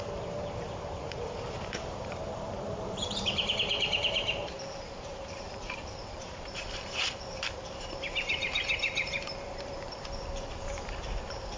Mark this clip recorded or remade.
remade